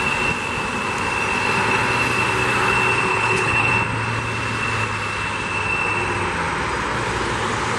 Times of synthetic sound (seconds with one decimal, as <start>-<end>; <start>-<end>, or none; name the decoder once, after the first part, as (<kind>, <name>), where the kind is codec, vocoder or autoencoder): 3.1-3.7 (codec, HILCodec)